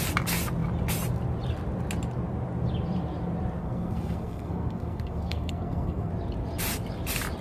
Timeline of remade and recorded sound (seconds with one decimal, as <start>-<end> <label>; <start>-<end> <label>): 0.0-3.6 recorded; 3.6-6.1 remade; 6.1-7.4 recorded